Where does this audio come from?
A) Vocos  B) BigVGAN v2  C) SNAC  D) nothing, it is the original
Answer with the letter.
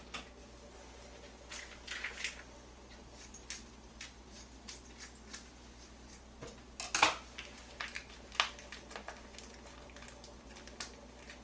D